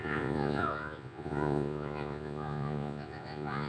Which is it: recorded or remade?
remade